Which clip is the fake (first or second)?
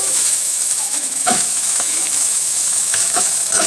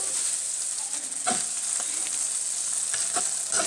first